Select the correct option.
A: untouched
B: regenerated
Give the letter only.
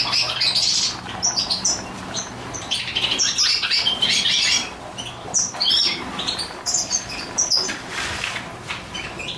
B